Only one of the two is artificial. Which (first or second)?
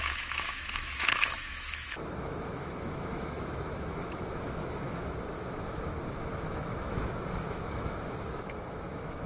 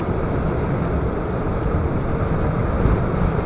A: first